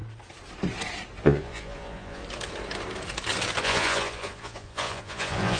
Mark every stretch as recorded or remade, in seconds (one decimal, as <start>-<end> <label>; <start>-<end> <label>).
0.0-1.2 recorded; 1.2-2.2 remade; 2.2-3.6 recorded; 3.6-5.6 remade